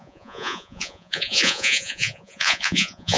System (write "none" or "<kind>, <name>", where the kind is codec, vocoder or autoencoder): vocoder, Vocos